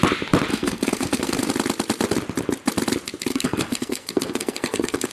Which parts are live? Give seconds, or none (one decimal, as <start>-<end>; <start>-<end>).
0.0-0.5; 1.5-3.3